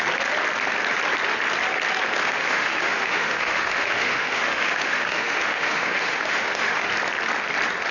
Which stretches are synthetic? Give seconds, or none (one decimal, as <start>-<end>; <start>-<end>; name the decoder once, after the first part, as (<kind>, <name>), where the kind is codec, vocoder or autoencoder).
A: 2.2-6.9 (autoencoder, DAC-VAE)